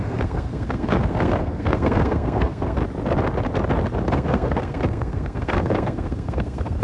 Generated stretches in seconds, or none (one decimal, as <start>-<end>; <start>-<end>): 0.0-2.8; 4.1-6.8